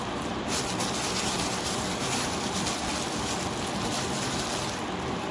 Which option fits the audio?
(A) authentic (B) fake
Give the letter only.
A